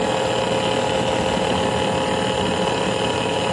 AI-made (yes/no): no